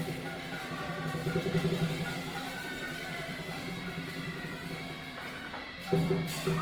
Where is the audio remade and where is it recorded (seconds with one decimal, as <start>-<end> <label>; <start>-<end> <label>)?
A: 0.0-6.6 remade

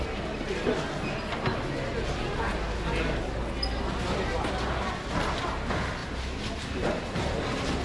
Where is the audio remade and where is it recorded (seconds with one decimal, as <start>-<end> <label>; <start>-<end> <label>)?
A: 0.0-7.8 recorded

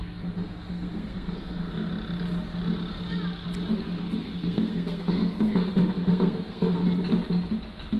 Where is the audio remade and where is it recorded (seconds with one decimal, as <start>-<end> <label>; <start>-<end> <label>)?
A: 0.0-1.9 remade; 1.9-3.7 recorded; 3.7-6.8 remade; 6.8-8.0 recorded

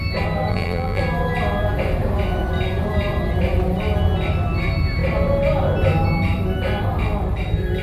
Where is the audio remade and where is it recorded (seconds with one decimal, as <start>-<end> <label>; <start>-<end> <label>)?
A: 0.0-0.5 recorded; 0.5-1.0 remade; 1.0-7.8 recorded

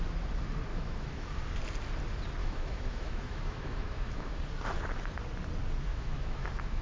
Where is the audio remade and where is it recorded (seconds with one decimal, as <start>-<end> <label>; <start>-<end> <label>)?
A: 0.0-0.7 recorded; 0.7-1.3 remade; 1.3-2.4 recorded; 2.4-4.4 remade; 4.4-5.9 recorded; 5.9-6.8 remade

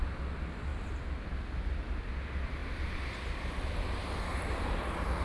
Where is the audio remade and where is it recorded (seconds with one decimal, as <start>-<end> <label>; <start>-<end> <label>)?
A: 0.0-5.2 recorded

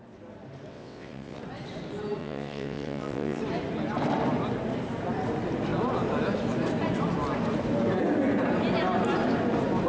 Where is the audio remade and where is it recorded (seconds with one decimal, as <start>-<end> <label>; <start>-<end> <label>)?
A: 0.0-0.7 recorded; 0.7-1.4 remade; 1.4-2.2 recorded; 2.2-3.4 remade; 3.4-9.9 recorded